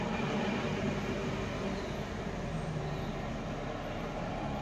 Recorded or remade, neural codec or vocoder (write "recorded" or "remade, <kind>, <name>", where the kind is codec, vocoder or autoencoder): recorded